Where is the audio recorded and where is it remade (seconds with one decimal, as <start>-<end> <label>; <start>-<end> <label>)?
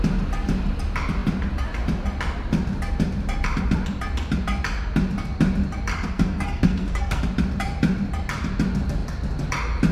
0.0-5.9 recorded; 5.9-7.2 remade; 7.2-9.9 recorded